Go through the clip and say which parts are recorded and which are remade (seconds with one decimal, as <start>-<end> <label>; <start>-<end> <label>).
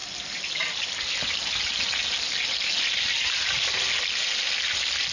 0.0-5.1 recorded